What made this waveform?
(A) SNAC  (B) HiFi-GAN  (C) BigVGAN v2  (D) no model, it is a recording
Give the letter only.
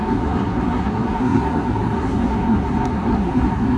A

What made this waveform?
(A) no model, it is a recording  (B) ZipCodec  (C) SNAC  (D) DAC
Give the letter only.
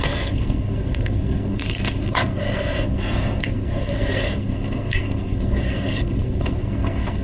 C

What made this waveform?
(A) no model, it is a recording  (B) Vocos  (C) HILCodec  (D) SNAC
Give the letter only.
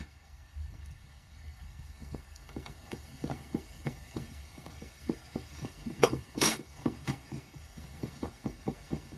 D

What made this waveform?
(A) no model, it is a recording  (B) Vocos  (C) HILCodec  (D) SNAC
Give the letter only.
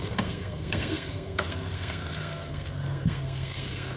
D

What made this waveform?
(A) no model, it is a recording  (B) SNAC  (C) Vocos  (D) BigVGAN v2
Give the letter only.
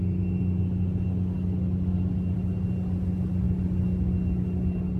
A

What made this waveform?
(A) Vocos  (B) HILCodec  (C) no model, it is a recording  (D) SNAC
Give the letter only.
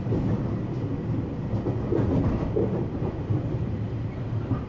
C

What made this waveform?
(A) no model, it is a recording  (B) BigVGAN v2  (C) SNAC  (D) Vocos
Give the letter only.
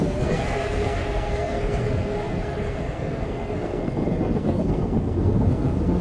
C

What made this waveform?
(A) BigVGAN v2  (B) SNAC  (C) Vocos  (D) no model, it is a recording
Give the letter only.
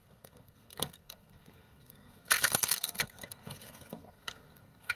B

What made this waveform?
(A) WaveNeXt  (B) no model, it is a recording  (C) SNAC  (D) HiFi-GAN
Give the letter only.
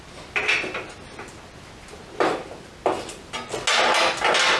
B